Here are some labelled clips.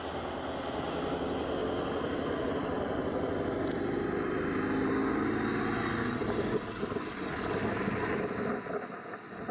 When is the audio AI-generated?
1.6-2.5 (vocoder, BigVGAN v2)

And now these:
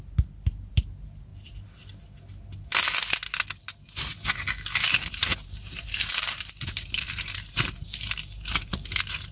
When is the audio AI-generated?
0.0-1.3 (vocoder, BigVGAN v2); 5.1-8.7

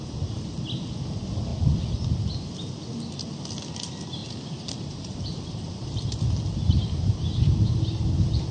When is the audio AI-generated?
4.2-8.5 (vocoder, BigVGAN v2)